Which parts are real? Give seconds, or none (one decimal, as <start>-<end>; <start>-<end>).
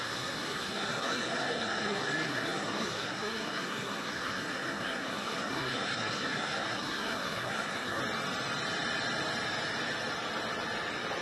8.0-11.2